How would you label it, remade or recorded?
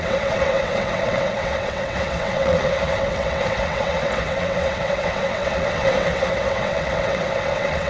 remade